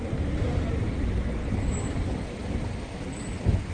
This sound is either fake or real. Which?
real